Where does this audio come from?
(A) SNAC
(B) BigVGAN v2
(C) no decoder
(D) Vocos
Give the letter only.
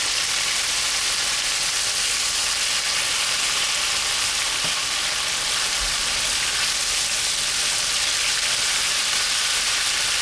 C